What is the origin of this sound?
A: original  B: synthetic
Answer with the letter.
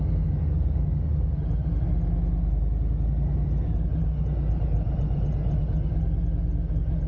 A